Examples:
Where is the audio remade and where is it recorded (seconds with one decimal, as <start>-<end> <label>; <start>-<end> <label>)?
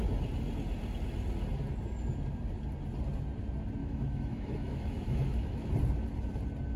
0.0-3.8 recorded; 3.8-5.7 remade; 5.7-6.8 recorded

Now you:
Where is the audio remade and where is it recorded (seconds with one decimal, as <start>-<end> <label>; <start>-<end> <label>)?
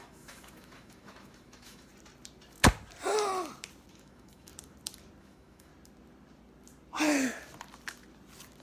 0.0-1.9 remade; 1.9-3.9 recorded; 3.9-4.5 remade; 4.5-5.2 recorded; 5.2-5.7 remade; 5.7-8.6 recorded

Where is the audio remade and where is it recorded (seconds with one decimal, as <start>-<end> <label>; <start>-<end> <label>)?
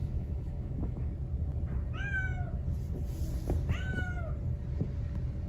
0.0-1.1 remade; 1.1-5.5 recorded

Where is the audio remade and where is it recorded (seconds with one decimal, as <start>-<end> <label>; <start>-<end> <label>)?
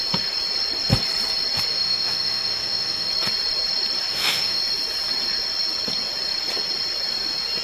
0.0-1.7 recorded; 1.7-3.1 remade; 3.1-4.1 recorded; 4.1-4.6 remade; 4.6-7.6 recorded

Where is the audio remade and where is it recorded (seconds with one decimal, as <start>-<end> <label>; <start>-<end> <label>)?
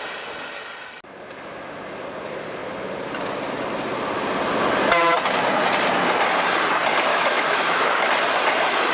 0.0-7.1 recorded; 7.1-8.1 remade; 8.1-8.9 recorded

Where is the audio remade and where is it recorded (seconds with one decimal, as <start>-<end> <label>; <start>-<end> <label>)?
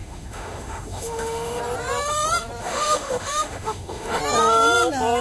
0.0-1.6 remade; 1.6-2.6 recorded; 2.6-4.2 remade; 4.2-5.2 recorded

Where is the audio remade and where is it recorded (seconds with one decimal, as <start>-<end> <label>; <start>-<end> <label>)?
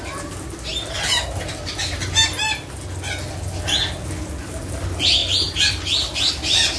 0.0-6.8 recorded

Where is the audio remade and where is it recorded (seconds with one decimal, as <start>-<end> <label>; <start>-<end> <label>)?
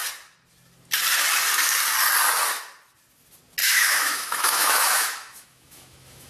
0.0-3.6 recorded; 3.6-6.3 remade